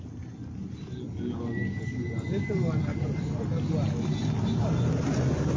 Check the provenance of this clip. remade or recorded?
recorded